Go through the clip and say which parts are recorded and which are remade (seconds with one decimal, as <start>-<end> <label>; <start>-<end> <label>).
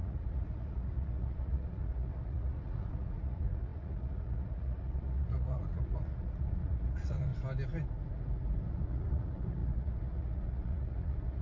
0.0-7.3 remade; 7.3-8.7 recorded; 8.7-11.4 remade